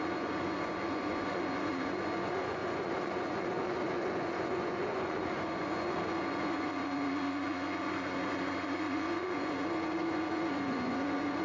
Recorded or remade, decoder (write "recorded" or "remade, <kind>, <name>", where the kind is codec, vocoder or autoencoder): remade, vocoder, Vocos